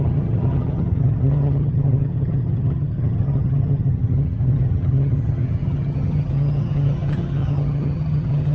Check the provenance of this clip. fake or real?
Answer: fake